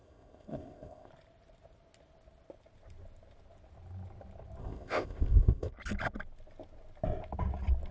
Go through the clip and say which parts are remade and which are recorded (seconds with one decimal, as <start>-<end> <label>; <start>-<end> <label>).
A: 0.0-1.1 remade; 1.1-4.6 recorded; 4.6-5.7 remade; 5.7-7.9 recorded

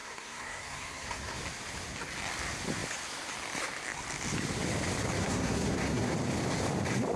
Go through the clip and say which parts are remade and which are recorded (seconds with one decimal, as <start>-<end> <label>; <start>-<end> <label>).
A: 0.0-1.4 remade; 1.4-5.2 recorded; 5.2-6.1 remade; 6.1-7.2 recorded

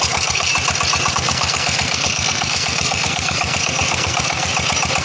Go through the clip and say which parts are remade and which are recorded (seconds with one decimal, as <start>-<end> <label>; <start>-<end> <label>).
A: 0.0-0.5 remade; 0.5-1.1 recorded; 1.1-4.5 remade; 4.5-5.0 recorded

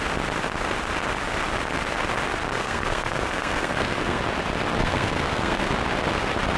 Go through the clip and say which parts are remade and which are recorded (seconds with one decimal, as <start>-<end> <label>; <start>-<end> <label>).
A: 0.0-2.5 recorded; 2.5-4.2 remade; 4.2-4.8 recorded; 4.8-5.7 remade; 5.7-6.6 recorded

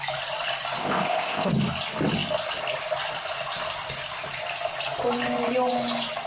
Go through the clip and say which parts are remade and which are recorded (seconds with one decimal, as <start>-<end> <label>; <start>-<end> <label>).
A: 0.0-0.8 recorded; 0.8-1.5 remade; 1.5-6.3 recorded

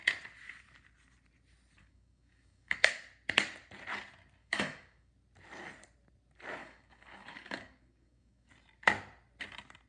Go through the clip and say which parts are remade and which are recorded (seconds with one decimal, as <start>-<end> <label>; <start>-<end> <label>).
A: 0.0-1.8 recorded; 1.8-2.9 remade; 2.9-4.4 recorded; 4.4-5.1 remade; 5.1-6.6 recorded; 6.6-8.5 remade; 8.5-9.9 recorded

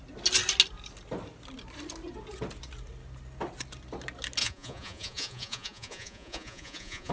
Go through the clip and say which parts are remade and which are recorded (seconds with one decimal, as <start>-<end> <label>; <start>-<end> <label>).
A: 0.0-4.4 recorded; 4.4-7.1 remade